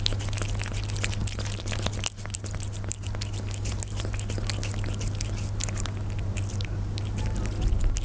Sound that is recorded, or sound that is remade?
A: recorded